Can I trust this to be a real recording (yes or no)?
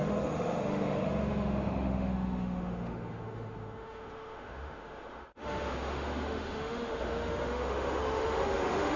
no